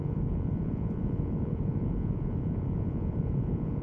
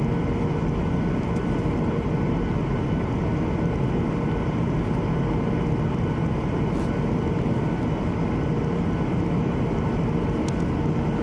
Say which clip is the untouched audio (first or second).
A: second